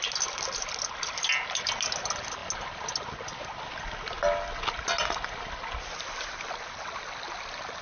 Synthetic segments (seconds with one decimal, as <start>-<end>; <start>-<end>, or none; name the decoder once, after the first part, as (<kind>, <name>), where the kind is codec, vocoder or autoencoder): none